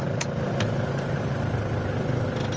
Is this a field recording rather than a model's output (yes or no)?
yes